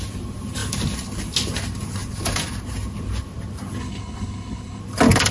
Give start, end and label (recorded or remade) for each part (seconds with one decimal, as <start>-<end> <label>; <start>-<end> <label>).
0.0-3.8 recorded; 3.8-4.8 remade; 4.8-5.3 recorded